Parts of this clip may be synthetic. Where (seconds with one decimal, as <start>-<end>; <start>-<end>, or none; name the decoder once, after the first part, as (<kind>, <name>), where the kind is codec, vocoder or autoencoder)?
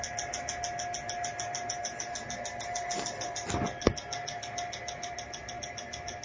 none